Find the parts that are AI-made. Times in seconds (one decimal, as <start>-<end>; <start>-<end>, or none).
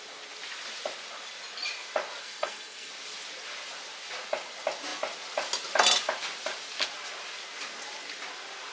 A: 2.2-2.9